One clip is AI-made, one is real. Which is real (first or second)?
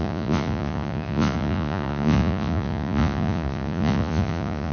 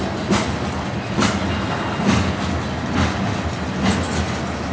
second